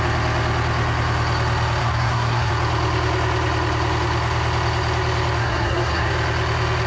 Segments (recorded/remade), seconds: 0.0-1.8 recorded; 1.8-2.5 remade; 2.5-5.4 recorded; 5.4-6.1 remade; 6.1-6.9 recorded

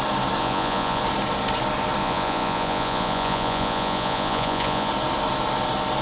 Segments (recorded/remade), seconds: 0.0-0.4 recorded; 0.4-1.0 remade; 1.0-2.0 recorded; 2.0-4.9 remade; 4.9-6.0 recorded

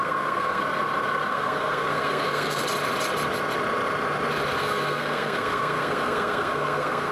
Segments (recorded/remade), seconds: 0.0-0.6 remade; 0.6-1.3 recorded; 1.3-2.6 remade; 2.6-4.6 recorded; 4.6-7.1 remade

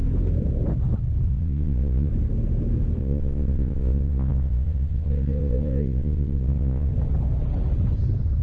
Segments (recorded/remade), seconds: 0.0-1.3 recorded; 1.3-2.1 remade; 2.1-3.0 recorded; 3.0-6.9 remade; 6.9-8.4 recorded

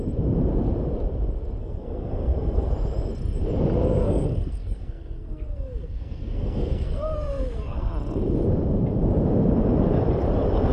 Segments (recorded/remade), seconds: 0.0-1.6 recorded; 1.6-2.7 remade; 2.7-3.9 recorded; 3.9-7.9 remade; 7.9-10.7 recorded

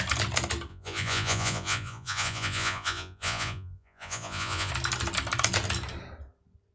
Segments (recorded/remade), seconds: 0.0-0.7 recorded; 0.7-4.7 remade; 4.7-6.7 recorded

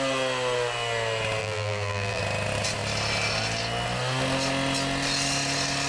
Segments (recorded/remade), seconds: 0.0-1.4 recorded; 1.4-2.2 remade; 2.2-5.9 recorded

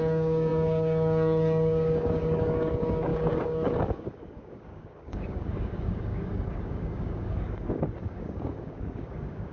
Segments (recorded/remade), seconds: 0.0-9.5 remade